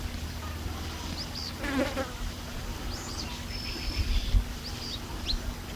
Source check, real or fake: real